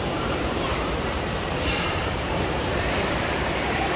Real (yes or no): no